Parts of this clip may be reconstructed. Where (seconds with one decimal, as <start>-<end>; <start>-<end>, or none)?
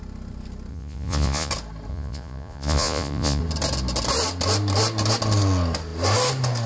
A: 0.7-1.5; 1.9-3.4